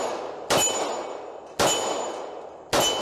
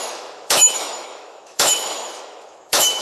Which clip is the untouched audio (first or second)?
first